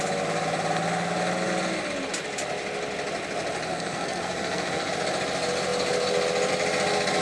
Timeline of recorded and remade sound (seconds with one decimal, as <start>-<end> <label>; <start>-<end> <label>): 0.0-3.7 recorded; 3.7-4.9 remade; 4.9-7.2 recorded